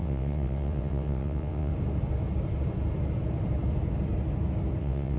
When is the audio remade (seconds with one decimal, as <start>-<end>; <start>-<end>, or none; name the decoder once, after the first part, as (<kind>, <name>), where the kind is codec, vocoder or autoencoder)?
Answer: 0.0-1.7 (vocoder, WaveNeXt); 4.8-5.2